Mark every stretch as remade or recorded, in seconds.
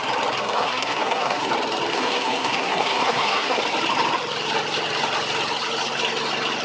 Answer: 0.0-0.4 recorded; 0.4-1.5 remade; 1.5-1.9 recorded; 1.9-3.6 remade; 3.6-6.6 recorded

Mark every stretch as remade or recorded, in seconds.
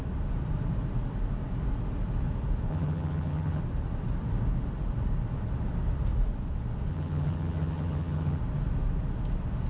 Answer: 0.0-2.7 recorded; 2.7-3.6 remade; 3.6-6.9 recorded; 6.9-8.4 remade; 8.4-9.7 recorded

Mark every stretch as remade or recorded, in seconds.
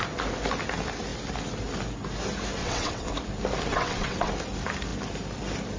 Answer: 0.0-2.6 recorded; 2.6-3.1 remade; 3.1-3.7 recorded; 3.7-4.3 remade; 4.3-5.8 recorded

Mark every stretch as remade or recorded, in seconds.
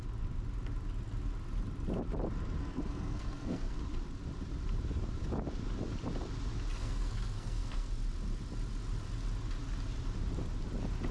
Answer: 0.0-2.6 recorded; 2.6-3.8 remade; 3.8-6.8 recorded; 6.8-7.9 remade; 7.9-11.1 recorded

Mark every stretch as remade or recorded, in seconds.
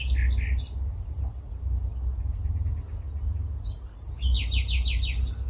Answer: 0.0-5.5 recorded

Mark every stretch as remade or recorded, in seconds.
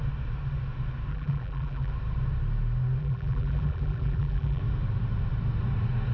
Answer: 0.0-1.1 recorded; 1.1-1.9 remade; 1.9-3.0 recorded; 3.0-4.6 remade; 4.6-6.1 recorded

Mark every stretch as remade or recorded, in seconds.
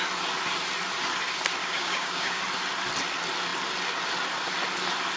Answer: 0.0-1.6 recorded; 1.6-2.4 remade; 2.4-5.2 recorded